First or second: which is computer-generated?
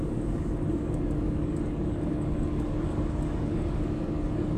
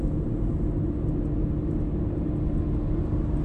first